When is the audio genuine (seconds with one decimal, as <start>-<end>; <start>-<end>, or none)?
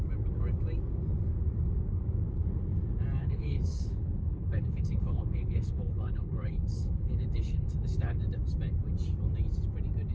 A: 0.0-3.2; 8.2-10.1